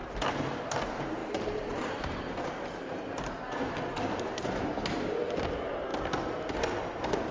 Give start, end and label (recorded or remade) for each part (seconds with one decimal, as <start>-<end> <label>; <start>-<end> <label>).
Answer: 0.0-1.2 recorded; 1.2-4.6 remade; 4.6-7.3 recorded